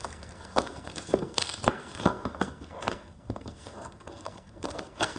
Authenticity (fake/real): fake